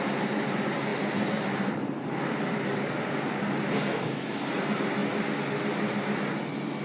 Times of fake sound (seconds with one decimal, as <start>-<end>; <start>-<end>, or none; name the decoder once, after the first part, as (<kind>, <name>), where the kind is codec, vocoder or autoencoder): 0.0-5.0 (vocoder, BigVGAN v2)

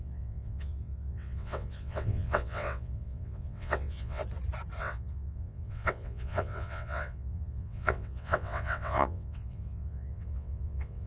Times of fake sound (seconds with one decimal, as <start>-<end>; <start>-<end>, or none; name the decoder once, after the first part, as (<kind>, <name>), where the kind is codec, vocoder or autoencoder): 0.0-4.2 (vocoder, WaveNeXt); 4.8-11.1

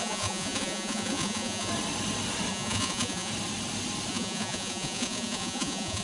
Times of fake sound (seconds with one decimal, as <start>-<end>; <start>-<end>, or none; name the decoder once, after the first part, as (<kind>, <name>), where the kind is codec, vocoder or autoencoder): 0.0-1.7 (vocoder, Vocos); 2.5-3.3; 4.1-6.0

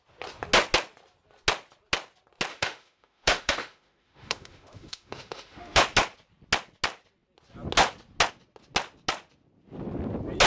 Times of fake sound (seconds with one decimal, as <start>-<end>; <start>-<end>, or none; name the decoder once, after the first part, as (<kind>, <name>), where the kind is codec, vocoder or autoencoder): 2.5-5.8 (autoencoder, DAC-VAE)

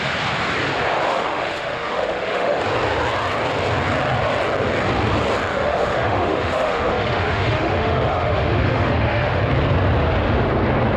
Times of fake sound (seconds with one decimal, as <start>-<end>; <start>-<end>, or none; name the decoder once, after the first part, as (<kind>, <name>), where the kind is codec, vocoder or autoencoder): 1.1-2.6 (autoencoder, DAC-VAE); 5.5-9.4

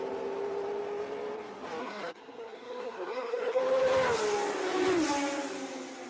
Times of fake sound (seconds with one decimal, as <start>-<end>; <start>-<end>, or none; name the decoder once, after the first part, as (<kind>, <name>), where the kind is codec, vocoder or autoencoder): 1.8-3.6 (codec, SNAC)